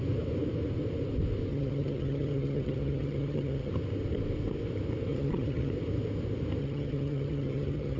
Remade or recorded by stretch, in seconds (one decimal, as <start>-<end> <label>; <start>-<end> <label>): 0.0-1.5 recorded; 1.5-3.7 remade; 3.7-5.1 recorded; 5.1-5.7 remade; 5.7-6.6 recorded; 6.6-8.0 remade